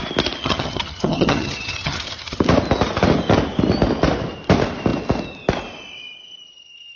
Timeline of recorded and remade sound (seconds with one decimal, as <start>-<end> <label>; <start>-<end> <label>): 0.0-0.4 recorded; 0.4-2.4 remade; 2.4-7.0 recorded